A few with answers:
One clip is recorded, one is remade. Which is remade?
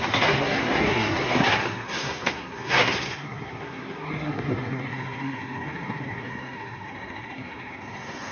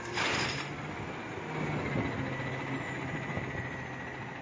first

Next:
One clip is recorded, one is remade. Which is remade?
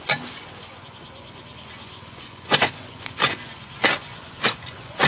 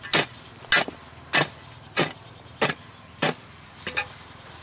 first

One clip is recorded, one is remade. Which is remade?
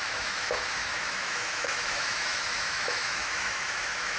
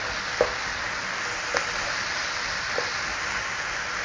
first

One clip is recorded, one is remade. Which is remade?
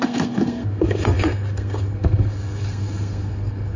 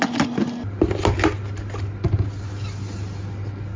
first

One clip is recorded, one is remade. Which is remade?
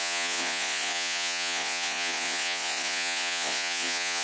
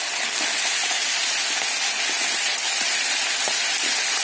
first